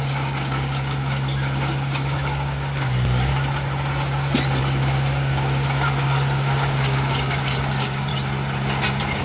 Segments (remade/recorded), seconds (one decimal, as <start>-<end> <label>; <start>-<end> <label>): 0.0-3.3 remade; 3.3-4.6 recorded; 4.6-8.1 remade; 8.1-9.2 recorded